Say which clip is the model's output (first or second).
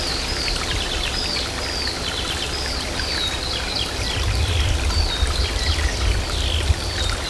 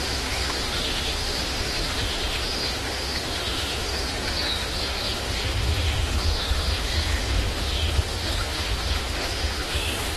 second